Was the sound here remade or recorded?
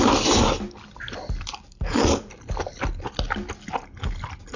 recorded